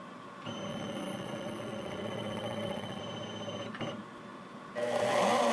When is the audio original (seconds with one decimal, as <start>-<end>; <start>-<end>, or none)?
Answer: 0.0-0.7; 3.0-5.5